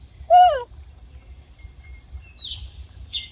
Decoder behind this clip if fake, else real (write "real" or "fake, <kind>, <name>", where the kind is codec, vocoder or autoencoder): fake, vocoder, BigVGAN v2